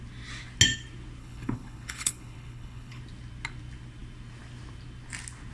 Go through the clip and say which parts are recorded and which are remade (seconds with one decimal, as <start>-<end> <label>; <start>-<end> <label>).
0.0-1.2 recorded; 1.2-3.0 remade; 3.0-5.5 recorded